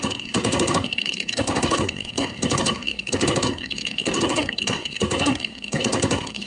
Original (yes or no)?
no